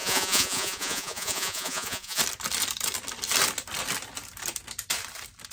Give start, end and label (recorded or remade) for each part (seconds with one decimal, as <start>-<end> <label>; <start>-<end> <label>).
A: 0.0-2.2 remade; 2.2-5.5 recorded